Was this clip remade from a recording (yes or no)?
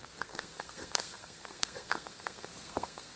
yes